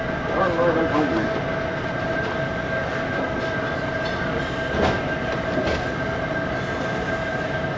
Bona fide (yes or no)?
yes